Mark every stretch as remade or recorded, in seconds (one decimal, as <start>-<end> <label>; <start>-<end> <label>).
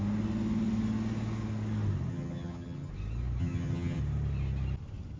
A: 0.0-2.1 recorded; 2.1-2.9 remade; 2.9-3.4 recorded; 3.4-4.0 remade; 4.0-5.2 recorded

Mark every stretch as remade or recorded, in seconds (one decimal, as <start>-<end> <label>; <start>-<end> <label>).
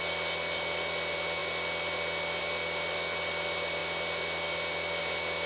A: 0.0-5.5 recorded